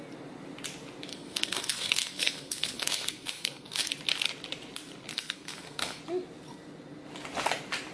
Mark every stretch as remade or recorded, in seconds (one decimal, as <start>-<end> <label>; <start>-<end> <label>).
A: 0.0-1.1 recorded; 1.1-3.9 remade; 3.9-5.1 recorded; 5.1-6.0 remade; 6.0-7.9 recorded